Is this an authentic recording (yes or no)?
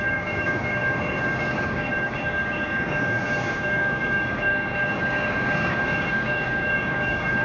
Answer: no